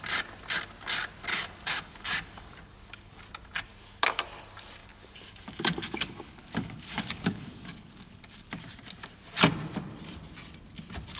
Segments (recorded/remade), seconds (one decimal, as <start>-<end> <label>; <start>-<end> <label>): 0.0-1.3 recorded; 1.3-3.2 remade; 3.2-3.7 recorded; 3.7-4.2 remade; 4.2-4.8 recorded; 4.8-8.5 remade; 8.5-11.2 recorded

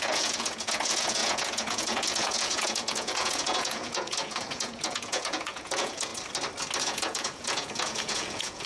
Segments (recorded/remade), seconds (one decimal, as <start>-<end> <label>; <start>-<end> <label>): 0.0-6.1 remade; 6.1-6.8 recorded; 6.8-8.7 remade

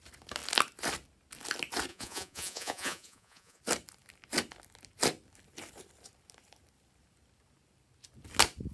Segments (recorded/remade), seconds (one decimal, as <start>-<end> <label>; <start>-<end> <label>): 0.0-1.9 recorded; 1.9-3.6 remade; 3.6-8.7 recorded

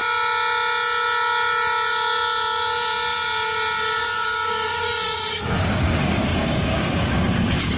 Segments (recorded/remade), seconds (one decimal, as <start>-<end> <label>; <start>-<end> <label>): 0.0-4.0 recorded; 4.0-7.8 remade

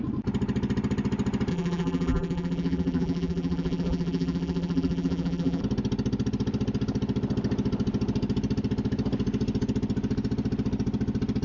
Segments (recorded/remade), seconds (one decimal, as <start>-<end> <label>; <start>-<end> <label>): 0.0-1.5 recorded; 1.5-5.6 remade; 5.6-11.4 recorded